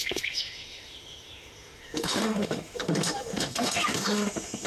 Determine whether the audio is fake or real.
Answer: fake